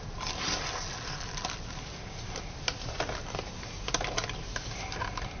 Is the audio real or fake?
real